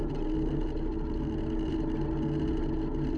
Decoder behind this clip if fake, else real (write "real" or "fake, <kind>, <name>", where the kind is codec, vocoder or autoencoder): real